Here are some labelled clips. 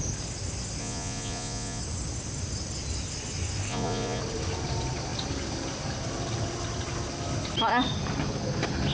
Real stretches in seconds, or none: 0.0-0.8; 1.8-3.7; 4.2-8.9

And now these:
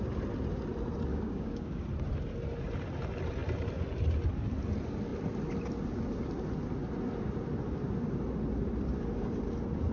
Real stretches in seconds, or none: 0.0-1.1; 1.8-9.9

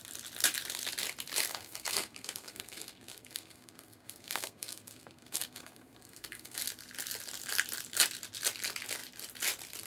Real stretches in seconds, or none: 0.0-1.5; 6.6-9.9

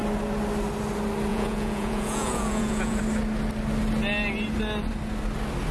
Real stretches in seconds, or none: 0.0-1.3; 3.0-5.7

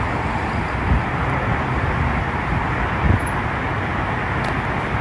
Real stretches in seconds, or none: 0.0-1.2; 3.0-5.0

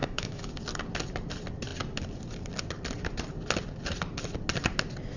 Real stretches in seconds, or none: 0.5-5.2